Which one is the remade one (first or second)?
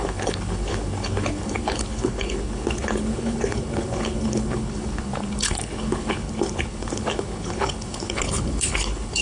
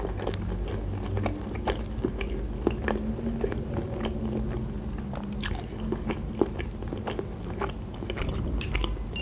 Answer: first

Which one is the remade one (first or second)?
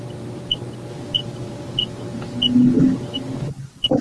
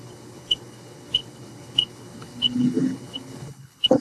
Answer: second